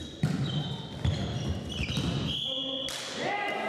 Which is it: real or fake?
real